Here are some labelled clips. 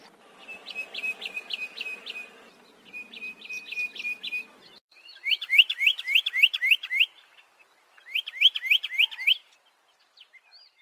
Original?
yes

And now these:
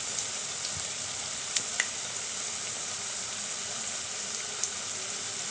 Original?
yes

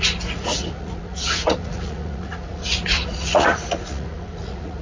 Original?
no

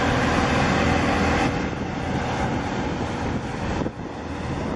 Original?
yes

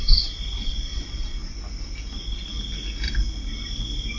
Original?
yes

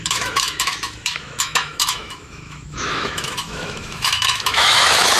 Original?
no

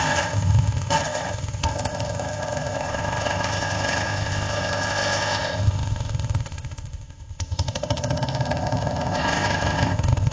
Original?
no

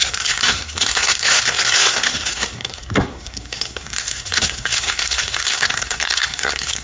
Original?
no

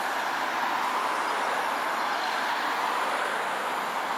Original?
yes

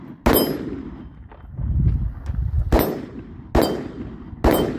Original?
yes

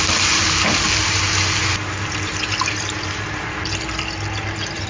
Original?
yes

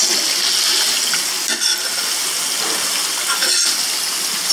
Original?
yes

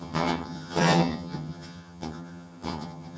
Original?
no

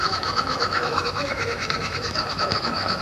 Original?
no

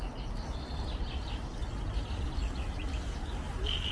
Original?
yes